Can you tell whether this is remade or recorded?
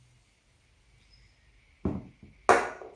recorded